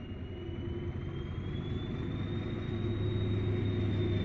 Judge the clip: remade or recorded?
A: recorded